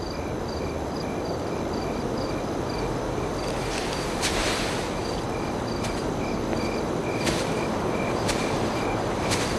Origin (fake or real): real